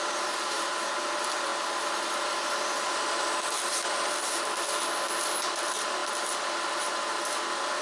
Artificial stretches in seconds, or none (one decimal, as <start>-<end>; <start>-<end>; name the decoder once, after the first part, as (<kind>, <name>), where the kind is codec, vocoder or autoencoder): none